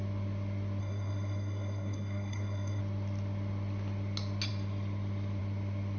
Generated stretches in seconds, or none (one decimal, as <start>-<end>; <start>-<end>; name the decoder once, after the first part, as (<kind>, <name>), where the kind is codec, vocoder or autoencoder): 0.8-2.8 (codec, SNAC)